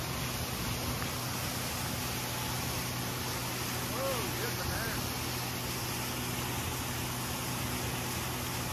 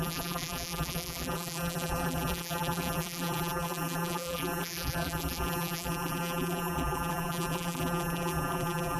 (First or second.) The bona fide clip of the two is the first